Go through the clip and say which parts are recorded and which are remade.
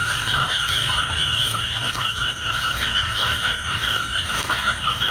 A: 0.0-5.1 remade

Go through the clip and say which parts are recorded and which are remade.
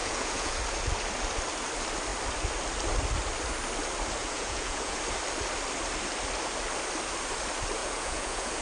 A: 0.0-0.5 remade; 0.5-4.2 recorded; 4.2-5.0 remade; 5.0-7.8 recorded; 7.8-8.6 remade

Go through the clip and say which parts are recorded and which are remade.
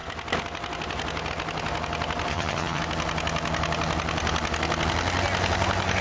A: 0.0-2.3 recorded; 2.3-2.8 remade; 2.8-6.0 recorded